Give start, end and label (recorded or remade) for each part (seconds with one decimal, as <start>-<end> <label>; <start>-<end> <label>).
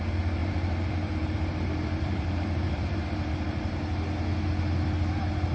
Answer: 0.0-0.4 recorded; 0.4-3.3 remade; 3.3-5.5 recorded